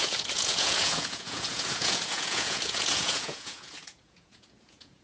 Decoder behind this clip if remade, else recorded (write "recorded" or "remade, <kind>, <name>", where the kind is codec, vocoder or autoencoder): remade, vocoder, Vocos